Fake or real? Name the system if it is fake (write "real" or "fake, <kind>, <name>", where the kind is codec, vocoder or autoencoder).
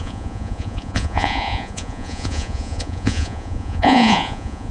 fake, vocoder, Vocos